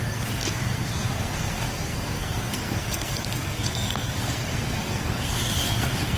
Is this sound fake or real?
fake